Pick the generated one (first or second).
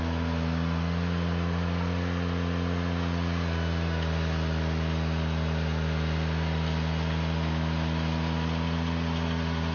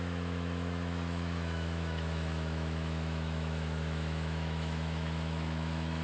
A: second